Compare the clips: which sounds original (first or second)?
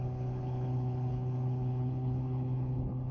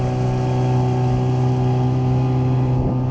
second